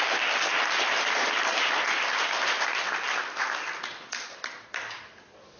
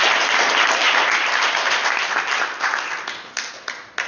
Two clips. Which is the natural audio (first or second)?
second